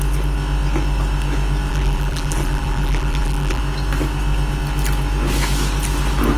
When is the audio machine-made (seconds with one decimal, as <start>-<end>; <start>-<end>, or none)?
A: 1.7-3.6